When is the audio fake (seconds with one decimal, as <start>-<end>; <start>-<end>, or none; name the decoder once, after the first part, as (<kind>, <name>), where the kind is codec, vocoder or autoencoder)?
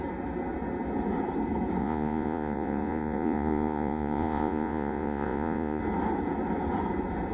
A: 1.8-5.8 (vocoder, Vocos)